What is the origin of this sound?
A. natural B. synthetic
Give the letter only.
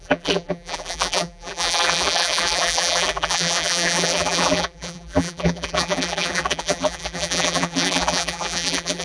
B